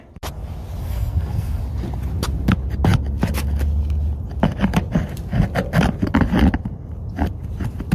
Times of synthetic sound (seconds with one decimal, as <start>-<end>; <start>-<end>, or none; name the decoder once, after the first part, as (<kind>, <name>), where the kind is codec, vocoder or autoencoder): 0.8-1.6 (codec, SNAC)

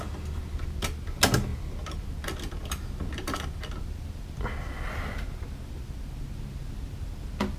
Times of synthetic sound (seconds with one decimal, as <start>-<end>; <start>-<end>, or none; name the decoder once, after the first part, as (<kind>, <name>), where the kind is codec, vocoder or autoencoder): none

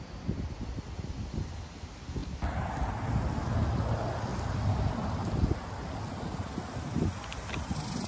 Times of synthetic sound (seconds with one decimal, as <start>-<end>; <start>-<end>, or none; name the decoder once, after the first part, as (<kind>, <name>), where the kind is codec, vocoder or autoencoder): none

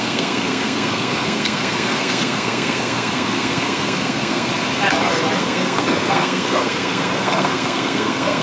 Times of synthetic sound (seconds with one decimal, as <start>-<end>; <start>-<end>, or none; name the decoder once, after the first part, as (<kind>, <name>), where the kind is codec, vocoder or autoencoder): 0.0-4.5 (codec, SNAC); 5.4-8.4

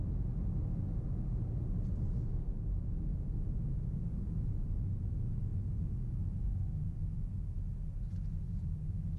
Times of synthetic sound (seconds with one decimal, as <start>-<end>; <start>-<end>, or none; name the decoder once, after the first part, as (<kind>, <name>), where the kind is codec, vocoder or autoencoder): none

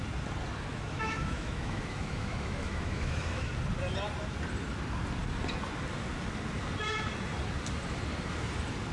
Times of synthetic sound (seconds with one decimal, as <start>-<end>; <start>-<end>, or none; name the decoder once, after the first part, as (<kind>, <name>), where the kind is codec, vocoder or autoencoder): 0.7-3.5 (autoencoder, DAC-VAE)

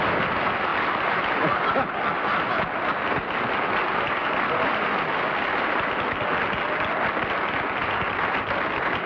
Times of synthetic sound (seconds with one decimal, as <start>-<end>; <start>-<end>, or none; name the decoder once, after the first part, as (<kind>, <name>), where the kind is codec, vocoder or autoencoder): none